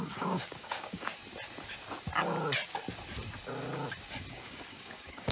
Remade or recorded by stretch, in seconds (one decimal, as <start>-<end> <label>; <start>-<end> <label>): 0.0-1.1 remade; 1.1-4.3 recorded; 4.3-5.3 remade